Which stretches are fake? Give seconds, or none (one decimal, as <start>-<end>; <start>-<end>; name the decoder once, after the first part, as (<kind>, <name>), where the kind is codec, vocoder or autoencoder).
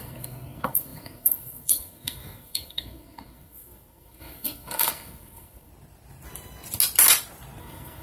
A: 0.0-5.7 (codec, SNAC); 7.6-8.0